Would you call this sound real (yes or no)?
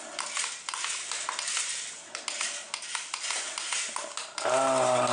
yes